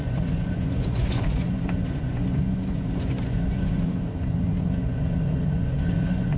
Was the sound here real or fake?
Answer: fake